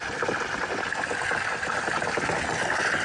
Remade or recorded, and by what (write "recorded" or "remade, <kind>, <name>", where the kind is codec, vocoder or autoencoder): recorded